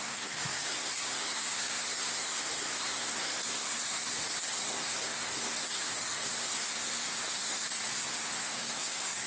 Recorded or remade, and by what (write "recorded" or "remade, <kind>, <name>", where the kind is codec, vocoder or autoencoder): remade, codec, SNAC